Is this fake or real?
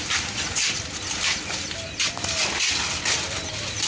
real